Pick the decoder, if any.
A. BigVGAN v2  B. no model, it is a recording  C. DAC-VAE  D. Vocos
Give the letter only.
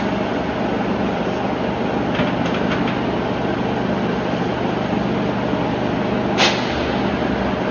B